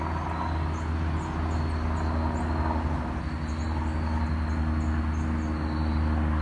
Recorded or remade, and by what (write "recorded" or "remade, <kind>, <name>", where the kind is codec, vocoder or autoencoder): recorded